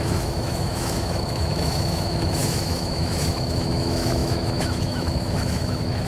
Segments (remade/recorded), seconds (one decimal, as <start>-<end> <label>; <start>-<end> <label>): 0.0-6.1 remade